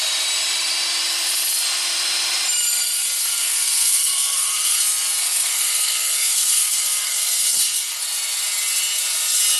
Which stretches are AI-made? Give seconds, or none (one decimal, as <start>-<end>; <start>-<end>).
3.2-4.8; 5.2-8.0